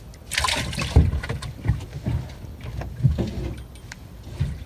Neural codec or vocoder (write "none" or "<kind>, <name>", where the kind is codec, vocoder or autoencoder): none